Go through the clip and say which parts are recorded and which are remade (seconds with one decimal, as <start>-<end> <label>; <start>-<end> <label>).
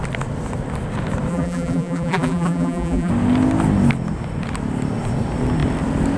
0.0-1.3 recorded; 1.3-3.1 remade; 3.1-6.2 recorded